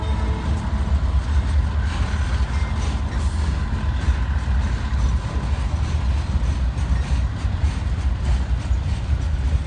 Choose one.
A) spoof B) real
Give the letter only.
B